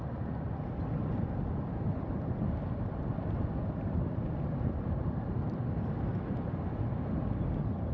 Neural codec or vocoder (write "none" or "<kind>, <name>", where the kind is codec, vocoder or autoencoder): none